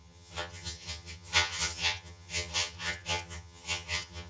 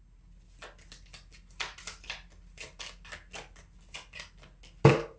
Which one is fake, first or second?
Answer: first